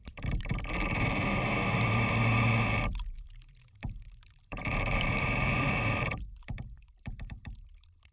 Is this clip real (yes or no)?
no